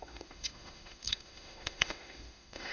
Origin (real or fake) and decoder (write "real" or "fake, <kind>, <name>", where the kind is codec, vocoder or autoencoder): fake, autoencoder, DAC-VAE